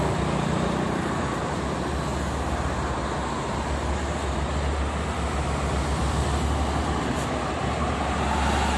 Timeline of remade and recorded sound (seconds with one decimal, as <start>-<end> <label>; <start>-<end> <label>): 0.0-8.8 recorded